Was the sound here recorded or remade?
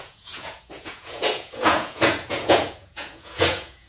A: remade